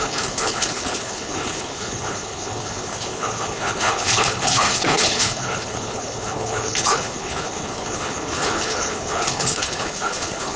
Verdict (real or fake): fake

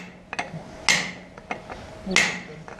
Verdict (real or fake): real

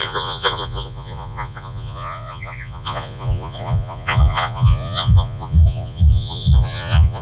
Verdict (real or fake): fake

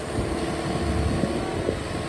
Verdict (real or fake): real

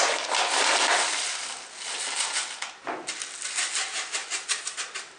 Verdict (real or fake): real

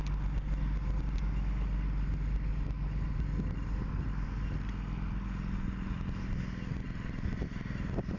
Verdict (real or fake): real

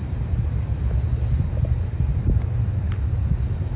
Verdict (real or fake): real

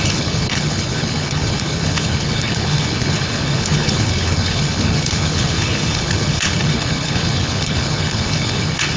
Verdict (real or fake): fake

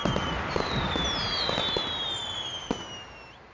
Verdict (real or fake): real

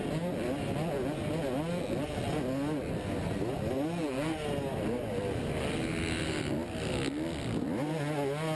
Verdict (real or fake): real